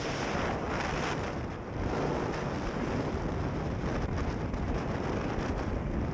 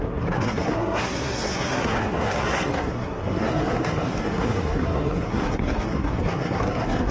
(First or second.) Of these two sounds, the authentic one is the first